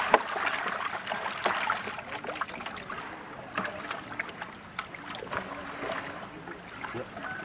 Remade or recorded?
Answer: recorded